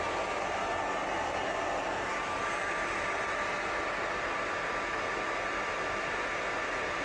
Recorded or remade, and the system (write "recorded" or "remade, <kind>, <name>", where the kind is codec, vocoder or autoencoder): recorded